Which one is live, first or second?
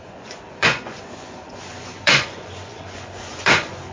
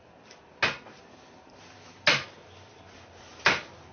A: second